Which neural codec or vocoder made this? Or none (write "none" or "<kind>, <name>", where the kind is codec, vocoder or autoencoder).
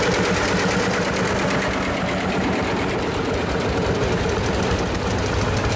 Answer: none